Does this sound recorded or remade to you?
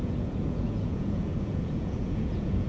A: remade